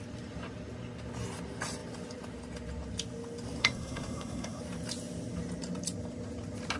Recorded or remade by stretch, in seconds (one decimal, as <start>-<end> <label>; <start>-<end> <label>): 0.0-3.6 recorded; 3.6-4.6 remade; 4.6-6.8 recorded